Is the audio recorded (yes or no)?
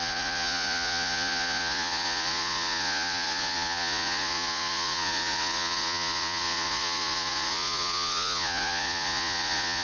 no